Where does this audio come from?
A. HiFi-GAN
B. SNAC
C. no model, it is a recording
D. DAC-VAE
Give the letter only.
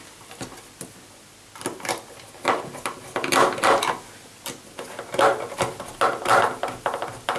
C